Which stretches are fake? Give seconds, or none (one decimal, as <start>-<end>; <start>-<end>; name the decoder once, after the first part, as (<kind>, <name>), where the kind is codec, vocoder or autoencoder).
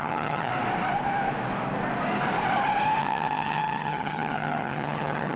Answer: 0.0-0.5 (vocoder, HiFi-GAN); 3.0-5.4